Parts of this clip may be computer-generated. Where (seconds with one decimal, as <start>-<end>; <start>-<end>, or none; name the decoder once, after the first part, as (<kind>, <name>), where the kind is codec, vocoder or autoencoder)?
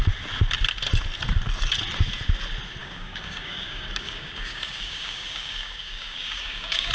2.8-6.9 (codec, DAC)